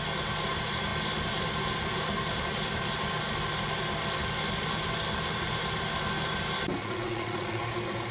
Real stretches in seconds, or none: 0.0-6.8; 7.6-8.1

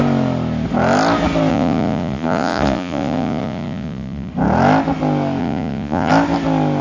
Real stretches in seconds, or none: 0.0-1.5; 4.3-5.4; 6.1-6.8